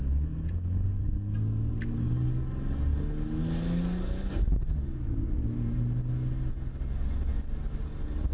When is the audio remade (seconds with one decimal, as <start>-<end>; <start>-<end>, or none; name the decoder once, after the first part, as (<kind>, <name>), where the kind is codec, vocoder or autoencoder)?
none